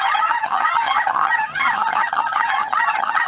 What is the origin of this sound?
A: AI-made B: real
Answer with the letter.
A